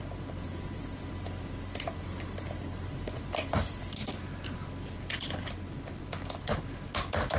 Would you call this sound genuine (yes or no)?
yes